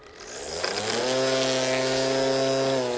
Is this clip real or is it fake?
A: real